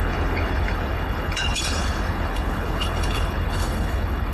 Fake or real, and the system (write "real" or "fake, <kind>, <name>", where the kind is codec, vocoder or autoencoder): fake, codec, HILCodec